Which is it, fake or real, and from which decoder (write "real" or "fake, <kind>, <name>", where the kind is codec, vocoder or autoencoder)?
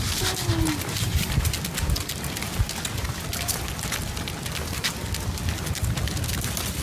real